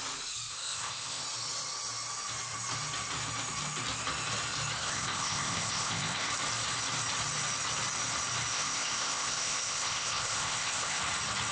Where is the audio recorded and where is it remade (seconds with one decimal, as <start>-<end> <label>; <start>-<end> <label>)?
0.0-0.5 recorded; 0.5-1.2 remade; 1.2-4.8 recorded; 4.8-6.3 remade; 6.3-8.5 recorded; 8.5-11.0 remade; 11.0-11.5 recorded